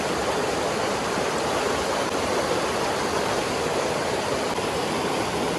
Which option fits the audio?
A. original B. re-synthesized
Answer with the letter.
A